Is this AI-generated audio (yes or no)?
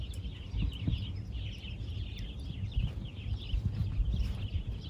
no